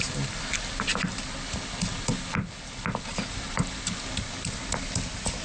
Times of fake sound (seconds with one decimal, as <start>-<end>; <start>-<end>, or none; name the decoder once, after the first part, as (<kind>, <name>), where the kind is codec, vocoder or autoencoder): none